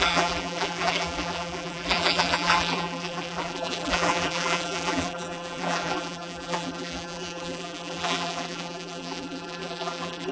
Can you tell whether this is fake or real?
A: fake